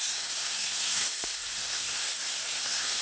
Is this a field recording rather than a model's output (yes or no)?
no